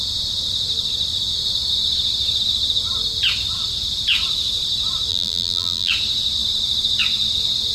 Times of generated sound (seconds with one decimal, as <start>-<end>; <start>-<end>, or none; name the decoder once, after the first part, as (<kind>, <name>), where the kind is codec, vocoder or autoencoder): 5.1-5.9 (vocoder, BigVGAN v2)